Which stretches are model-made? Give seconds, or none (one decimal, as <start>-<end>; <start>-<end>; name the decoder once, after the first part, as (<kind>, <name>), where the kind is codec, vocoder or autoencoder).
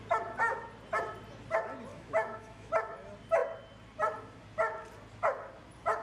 1.9-2.7 (autoencoder, DAC-VAE)